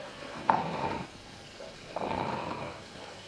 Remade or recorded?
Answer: remade